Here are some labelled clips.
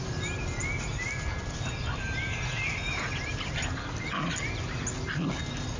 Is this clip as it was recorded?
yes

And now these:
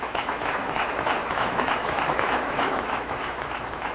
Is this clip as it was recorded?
no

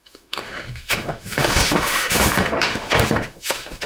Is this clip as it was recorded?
no